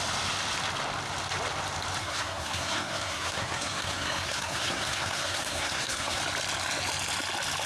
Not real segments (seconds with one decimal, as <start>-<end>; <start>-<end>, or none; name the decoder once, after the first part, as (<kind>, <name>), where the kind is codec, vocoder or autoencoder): 2.0-6.2 (codec, SNAC)